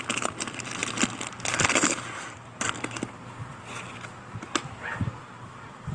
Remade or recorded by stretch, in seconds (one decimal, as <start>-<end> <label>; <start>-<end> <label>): 0.0-5.9 recorded